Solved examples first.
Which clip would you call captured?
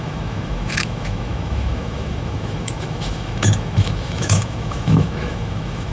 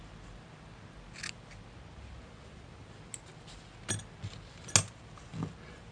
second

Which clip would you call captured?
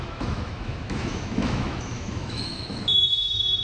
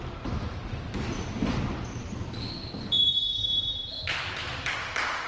second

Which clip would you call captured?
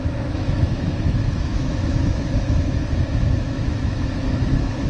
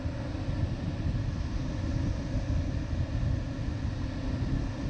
second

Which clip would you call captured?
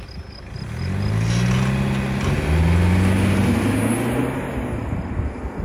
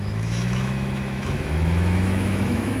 first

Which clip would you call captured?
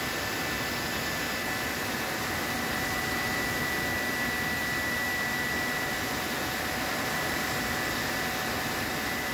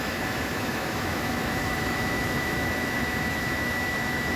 first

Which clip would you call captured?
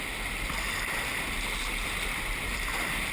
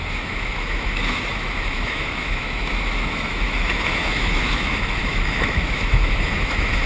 first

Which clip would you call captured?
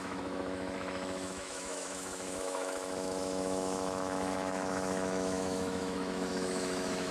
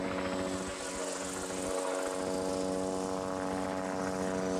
second